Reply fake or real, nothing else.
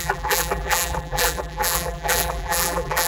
fake